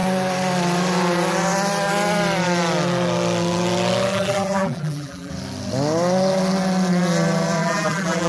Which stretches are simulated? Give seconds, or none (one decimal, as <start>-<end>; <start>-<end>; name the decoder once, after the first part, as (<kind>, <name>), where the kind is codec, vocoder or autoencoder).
4.1-5.3 (vocoder, BigVGAN v2); 7.6-8.3